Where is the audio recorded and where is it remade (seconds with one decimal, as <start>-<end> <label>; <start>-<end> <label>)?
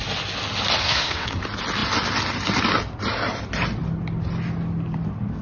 0.0-0.8 recorded; 0.8-1.4 remade; 1.4-5.4 recorded